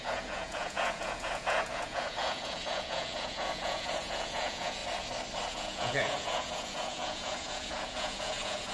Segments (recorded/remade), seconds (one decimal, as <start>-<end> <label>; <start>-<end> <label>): 0.0-4.8 remade; 4.8-5.5 recorded; 5.5-8.7 remade